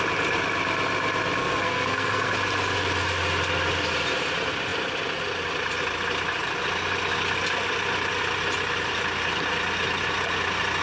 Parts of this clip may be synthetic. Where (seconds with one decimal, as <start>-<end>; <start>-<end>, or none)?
1.4-2.3